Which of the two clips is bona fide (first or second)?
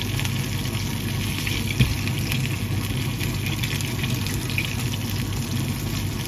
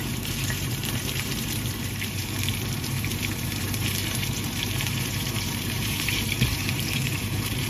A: first